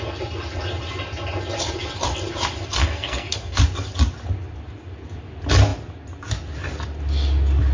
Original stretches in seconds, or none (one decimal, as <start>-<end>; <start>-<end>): 0.0-2.8; 3.6-7.7